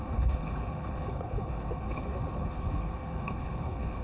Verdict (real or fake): fake